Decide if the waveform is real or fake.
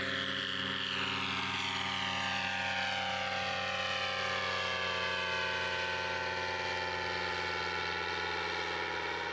real